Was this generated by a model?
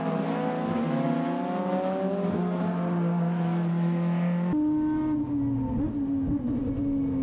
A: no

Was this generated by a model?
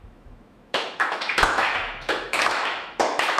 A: yes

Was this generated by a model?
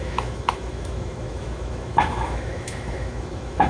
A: yes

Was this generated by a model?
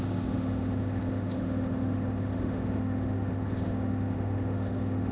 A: yes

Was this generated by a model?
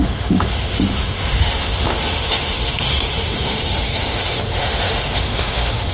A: yes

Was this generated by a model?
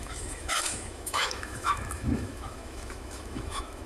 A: yes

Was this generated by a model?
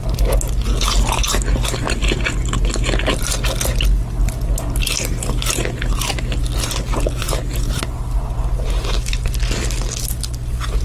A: no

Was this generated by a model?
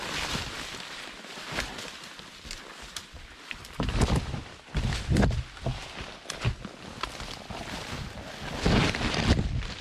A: no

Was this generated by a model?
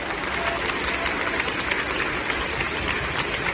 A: no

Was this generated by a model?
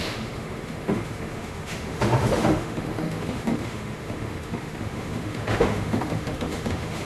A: yes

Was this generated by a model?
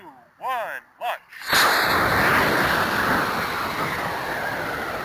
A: no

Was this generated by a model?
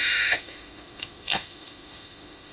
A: yes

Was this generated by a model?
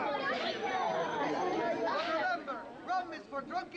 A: no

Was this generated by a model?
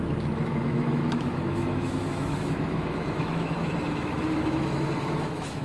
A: yes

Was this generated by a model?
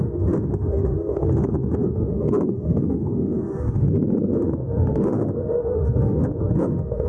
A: yes